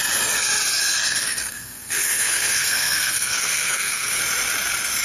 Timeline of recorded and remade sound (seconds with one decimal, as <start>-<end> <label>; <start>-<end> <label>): 0.0-1.2 recorded; 1.2-4.2 remade; 4.2-5.0 recorded